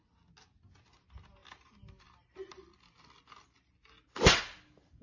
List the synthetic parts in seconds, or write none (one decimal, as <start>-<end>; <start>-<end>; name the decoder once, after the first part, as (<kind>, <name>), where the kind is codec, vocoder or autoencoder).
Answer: none